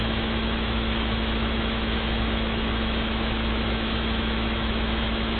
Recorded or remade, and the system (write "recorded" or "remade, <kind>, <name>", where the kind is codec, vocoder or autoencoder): remade, autoencoder, DAC-VAE